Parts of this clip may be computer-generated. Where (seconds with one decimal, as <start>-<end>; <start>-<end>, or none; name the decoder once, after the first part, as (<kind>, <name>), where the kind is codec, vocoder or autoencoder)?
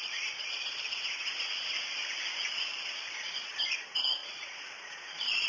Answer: 0.0-2.0 (vocoder, Vocos); 3.4-5.5